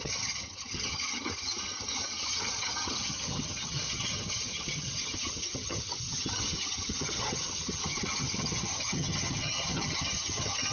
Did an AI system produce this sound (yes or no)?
yes